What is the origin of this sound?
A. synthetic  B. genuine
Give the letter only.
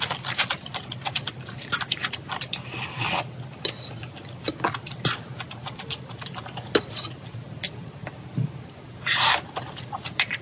B